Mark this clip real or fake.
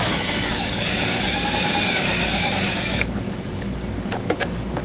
fake